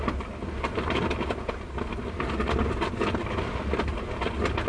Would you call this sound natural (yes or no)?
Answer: yes